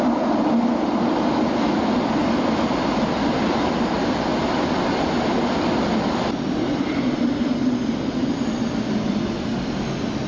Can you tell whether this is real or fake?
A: real